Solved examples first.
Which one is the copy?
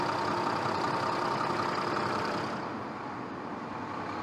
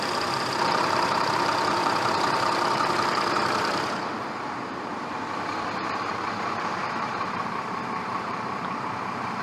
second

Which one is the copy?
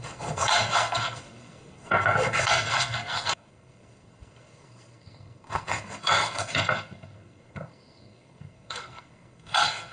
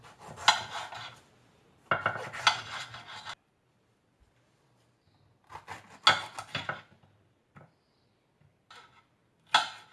first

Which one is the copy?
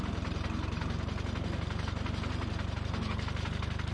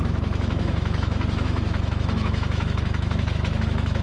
second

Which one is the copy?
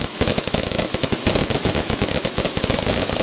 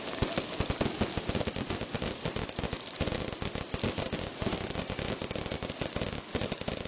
first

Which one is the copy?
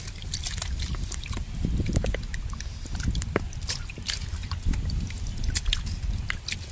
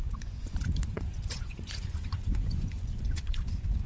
second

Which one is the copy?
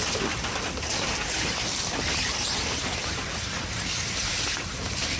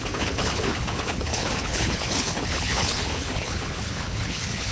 second